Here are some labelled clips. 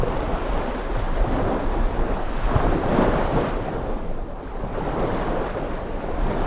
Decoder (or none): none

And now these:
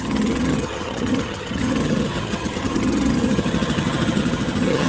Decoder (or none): vocoder, HiFi-GAN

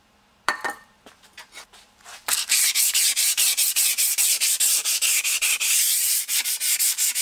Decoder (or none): vocoder, BigVGAN v2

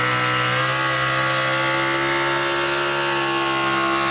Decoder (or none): none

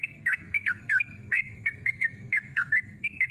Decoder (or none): codec, SNAC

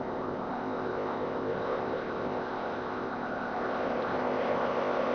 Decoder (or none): codec, ZipCodec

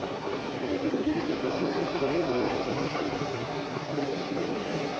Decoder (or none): codec, SNAC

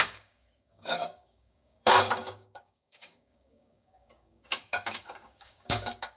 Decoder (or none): codec, DAC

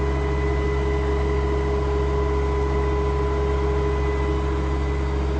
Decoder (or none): none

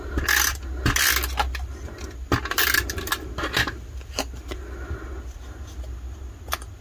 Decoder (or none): none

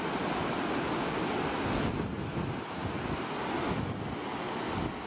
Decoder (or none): none